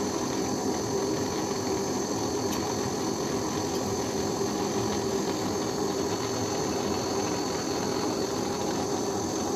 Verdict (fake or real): real